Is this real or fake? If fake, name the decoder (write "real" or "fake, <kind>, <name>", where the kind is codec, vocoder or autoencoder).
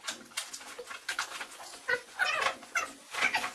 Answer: fake, vocoder, Vocos